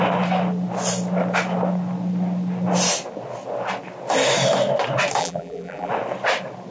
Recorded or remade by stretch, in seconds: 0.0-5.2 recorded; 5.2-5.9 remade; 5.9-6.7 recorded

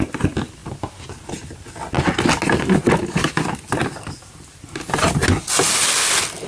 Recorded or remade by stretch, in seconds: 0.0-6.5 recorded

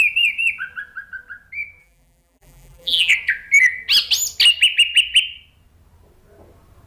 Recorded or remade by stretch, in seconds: 0.0-1.8 recorded; 1.8-3.1 remade; 3.1-6.9 recorded

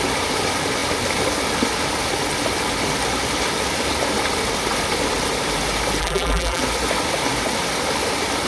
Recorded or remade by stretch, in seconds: 0.0-6.0 recorded; 6.0-6.6 remade; 6.6-8.5 recorded

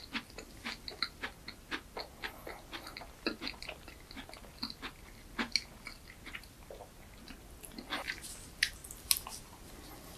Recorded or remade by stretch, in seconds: 0.0-10.2 recorded

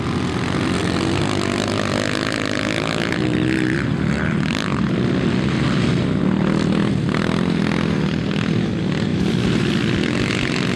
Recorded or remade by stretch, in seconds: 0.0-10.8 recorded